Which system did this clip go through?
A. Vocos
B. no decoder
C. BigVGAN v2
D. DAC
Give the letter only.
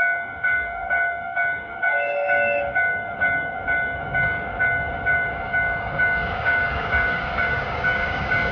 D